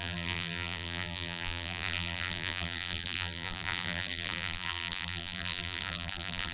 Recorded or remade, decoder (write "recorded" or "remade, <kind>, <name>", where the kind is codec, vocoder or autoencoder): remade, vocoder, BigVGAN v2